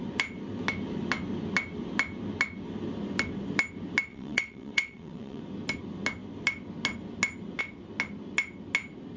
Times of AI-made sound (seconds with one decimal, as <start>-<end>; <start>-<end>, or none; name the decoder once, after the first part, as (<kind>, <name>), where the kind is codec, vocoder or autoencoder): 4.1-5.4 (vocoder, WaveNeXt)